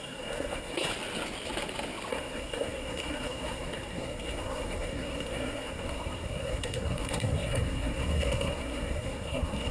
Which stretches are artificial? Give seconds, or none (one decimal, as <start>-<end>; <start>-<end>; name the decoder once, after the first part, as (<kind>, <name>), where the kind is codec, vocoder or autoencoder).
0.0-0.9 (codec, SNAC); 2.1-9.7